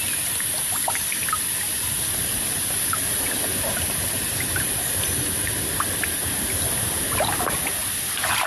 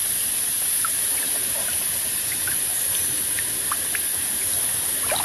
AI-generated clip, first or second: first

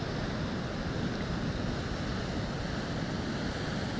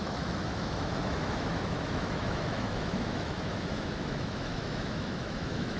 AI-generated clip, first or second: second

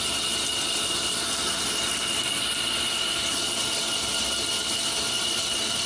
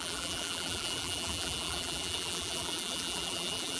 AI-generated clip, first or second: second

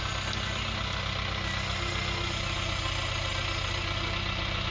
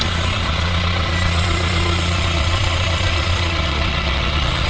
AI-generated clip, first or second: second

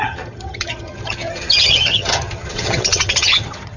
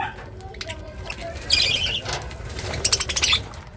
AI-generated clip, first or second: first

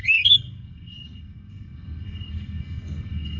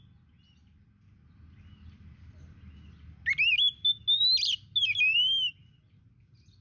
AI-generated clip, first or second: first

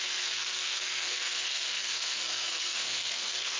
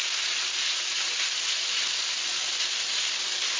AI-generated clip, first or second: first